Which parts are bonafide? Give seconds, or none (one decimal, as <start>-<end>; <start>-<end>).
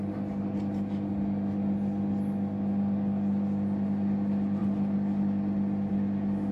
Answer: 0.0-6.5